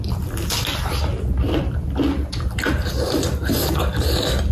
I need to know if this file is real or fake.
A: real